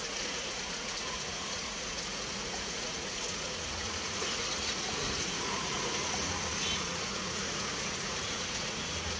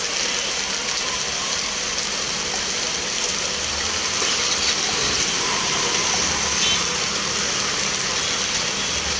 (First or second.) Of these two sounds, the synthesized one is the first